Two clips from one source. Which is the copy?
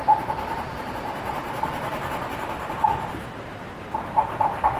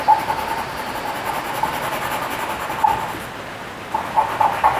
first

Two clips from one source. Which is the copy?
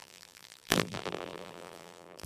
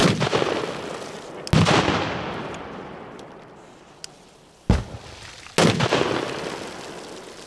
first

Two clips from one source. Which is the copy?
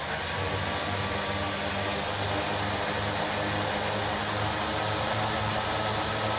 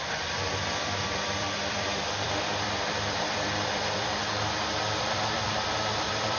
second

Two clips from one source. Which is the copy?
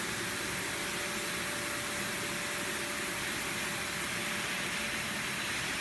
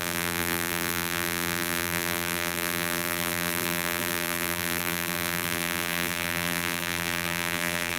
second